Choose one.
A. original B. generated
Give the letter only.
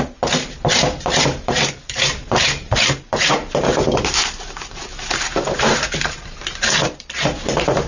B